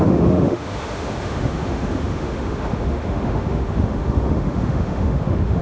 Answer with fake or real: fake